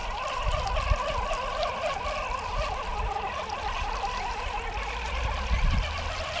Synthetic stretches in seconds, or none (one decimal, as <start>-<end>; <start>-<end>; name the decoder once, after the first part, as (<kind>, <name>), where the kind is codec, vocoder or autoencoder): none